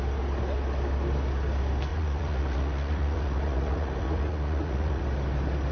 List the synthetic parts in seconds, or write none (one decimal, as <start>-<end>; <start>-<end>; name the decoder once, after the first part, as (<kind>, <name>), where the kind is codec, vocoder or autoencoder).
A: 1.9-5.0 (vocoder, Vocos)

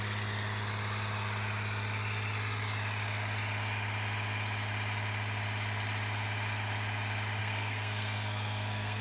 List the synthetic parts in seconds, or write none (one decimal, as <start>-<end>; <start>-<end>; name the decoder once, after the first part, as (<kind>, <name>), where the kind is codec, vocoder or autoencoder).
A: 7.4-9.0 (codec, SNAC)

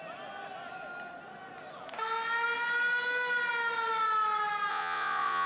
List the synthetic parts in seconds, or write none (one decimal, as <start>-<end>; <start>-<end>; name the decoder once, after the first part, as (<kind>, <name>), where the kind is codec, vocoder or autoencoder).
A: 4.7-5.5 (vocoder, Vocos)